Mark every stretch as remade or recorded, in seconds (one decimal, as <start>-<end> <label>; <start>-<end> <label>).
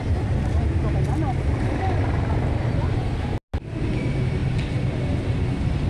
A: 0.0-5.9 recorded